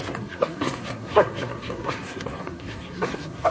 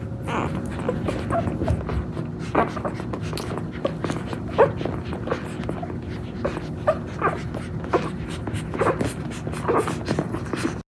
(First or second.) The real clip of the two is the second